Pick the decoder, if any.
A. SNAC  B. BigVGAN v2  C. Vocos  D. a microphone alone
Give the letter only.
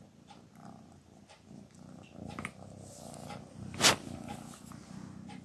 D